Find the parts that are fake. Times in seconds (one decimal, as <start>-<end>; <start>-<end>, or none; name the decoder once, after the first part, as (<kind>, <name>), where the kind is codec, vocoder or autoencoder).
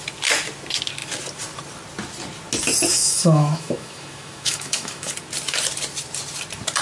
2.9-5.1 (autoencoder, DAC-VAE)